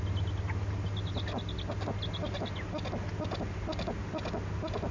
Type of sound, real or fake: real